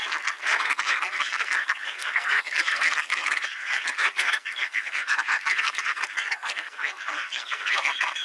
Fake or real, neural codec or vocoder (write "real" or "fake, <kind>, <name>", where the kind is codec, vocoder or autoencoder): fake, codec, SNAC